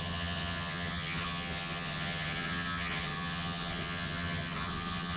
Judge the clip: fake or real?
fake